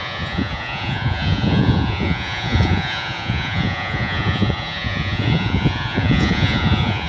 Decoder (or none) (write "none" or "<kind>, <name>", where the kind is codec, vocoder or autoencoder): vocoder, Vocos